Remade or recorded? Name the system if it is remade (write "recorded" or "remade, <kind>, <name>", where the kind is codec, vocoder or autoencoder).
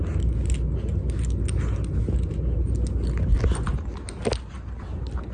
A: recorded